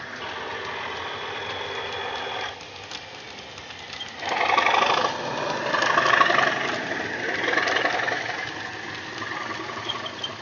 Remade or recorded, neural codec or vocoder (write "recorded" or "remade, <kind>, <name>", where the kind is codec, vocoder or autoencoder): recorded